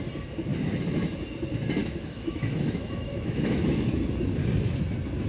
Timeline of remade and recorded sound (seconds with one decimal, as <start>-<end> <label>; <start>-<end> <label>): 0.0-1.8 recorded; 1.8-3.9 remade; 3.9-5.3 recorded